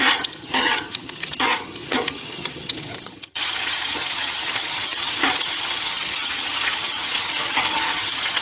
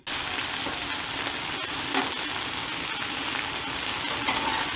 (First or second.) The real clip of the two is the second